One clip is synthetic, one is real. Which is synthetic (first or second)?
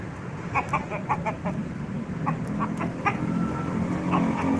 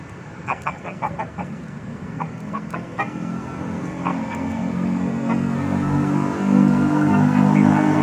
second